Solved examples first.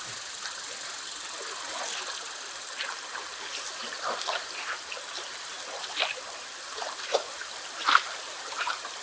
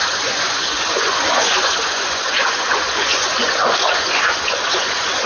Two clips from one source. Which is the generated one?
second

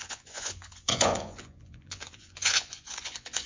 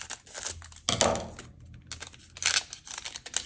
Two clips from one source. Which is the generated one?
first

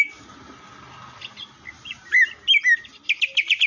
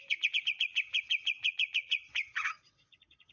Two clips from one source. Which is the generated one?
second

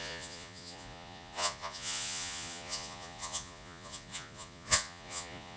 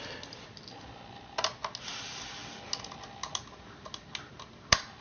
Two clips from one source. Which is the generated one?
first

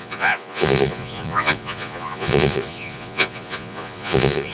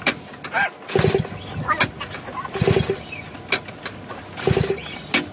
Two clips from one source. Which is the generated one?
first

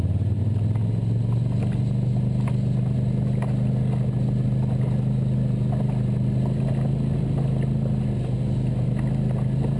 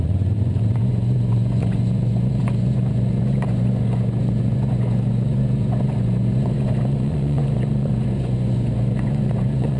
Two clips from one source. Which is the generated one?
second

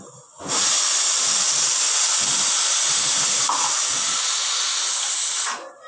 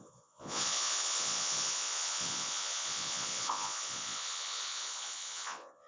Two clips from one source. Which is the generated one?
second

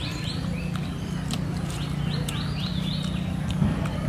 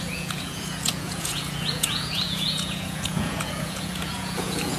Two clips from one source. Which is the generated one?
second